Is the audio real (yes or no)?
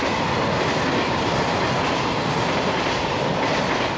yes